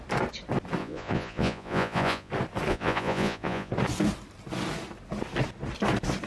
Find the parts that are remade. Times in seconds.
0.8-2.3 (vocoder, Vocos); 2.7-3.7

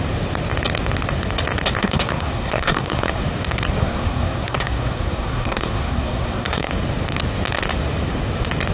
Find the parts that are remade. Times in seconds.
1.8-3.2 (codec, SNAC); 3.8-6.7

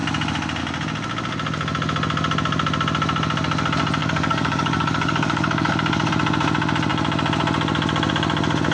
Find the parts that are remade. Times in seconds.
4.0-6.1 (codec, DAC)